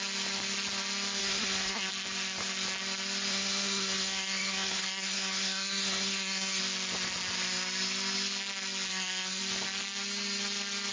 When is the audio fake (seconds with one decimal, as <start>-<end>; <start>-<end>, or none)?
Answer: 1.2-1.9; 3.3-6.6; 8.9-9.4